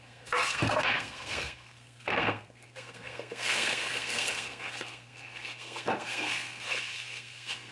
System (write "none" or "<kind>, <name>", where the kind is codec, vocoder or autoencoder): codec, SNAC